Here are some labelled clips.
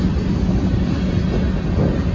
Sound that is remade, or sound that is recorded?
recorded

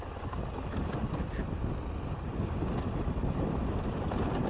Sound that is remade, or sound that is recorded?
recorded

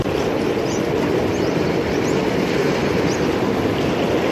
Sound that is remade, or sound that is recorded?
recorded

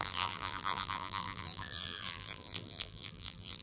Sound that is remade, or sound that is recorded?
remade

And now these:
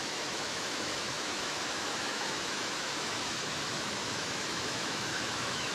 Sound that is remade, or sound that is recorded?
remade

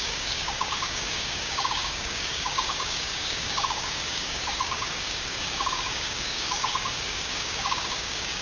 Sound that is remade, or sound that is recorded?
remade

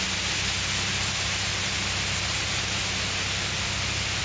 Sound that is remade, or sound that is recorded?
recorded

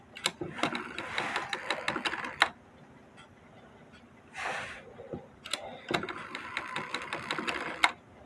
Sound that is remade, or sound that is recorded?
recorded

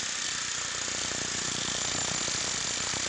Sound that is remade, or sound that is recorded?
recorded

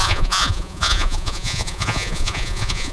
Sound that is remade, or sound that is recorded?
remade